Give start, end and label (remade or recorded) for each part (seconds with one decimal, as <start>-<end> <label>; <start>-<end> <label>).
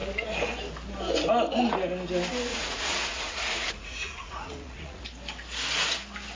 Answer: 0.0-2.5 recorded; 2.5-5.0 remade; 5.0-6.4 recorded